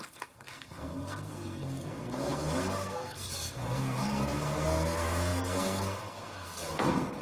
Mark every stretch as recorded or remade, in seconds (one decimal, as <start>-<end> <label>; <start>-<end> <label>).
0.0-7.2 remade